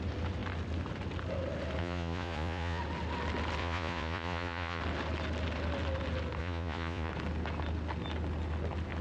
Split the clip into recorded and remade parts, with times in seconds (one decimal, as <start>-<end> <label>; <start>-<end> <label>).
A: 0.0-1.8 recorded; 1.8-2.8 remade; 2.8-3.6 recorded; 3.6-4.8 remade; 4.8-6.4 recorded; 6.4-7.1 remade; 7.1-9.0 recorded